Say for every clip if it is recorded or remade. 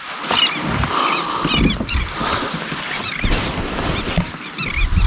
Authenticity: recorded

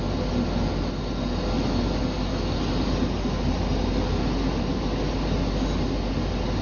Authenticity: recorded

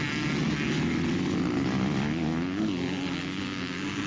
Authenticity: recorded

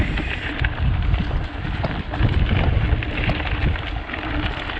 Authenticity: recorded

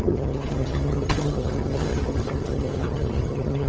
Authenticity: remade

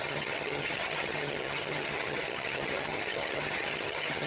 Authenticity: remade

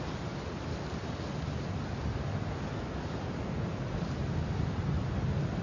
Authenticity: recorded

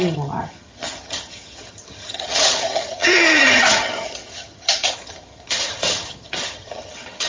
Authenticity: remade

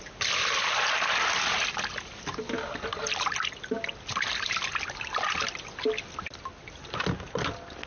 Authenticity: recorded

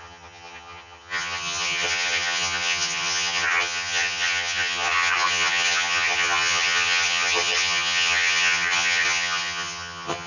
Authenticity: remade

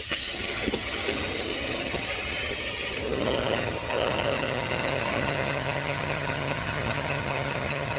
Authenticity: remade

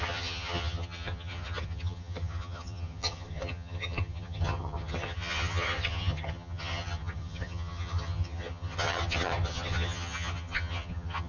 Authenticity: remade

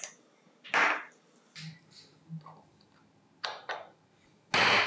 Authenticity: recorded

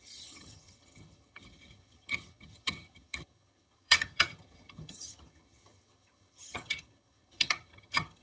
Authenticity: remade